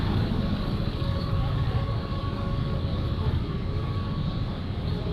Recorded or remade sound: remade